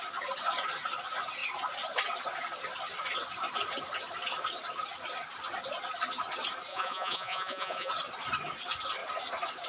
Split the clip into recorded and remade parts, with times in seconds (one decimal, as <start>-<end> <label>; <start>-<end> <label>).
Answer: 0.0-6.7 recorded; 6.7-7.9 remade; 7.9-9.7 recorded